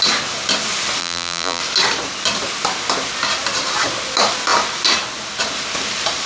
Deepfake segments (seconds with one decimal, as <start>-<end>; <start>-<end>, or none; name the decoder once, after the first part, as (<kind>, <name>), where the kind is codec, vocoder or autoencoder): 1.0-1.6 (vocoder, BigVGAN v2)

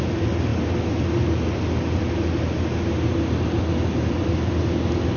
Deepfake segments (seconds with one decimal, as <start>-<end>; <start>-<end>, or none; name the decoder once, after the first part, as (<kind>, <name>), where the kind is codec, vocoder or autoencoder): none

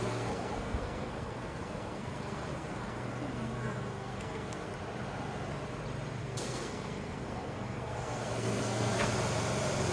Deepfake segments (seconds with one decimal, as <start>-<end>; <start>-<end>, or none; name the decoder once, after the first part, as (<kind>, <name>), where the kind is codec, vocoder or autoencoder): 0.0-4.7 (codec, SNAC); 6.2-9.1

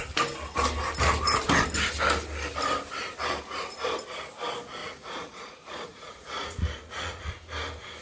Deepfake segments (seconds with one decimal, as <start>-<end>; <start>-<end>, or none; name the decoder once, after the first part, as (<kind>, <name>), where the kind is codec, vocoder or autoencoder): 4.8-7.3 (vocoder, Vocos)

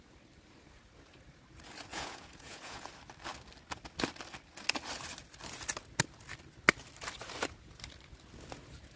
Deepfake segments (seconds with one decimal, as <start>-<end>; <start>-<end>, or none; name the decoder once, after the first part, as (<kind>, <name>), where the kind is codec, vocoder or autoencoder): 1.9-2.9 (vocoder, Vocos)